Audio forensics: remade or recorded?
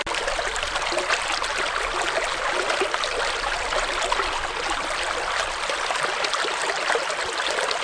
recorded